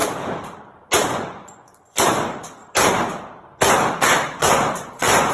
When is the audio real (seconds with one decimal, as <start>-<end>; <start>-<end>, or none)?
0.0-1.1; 2.6-4.0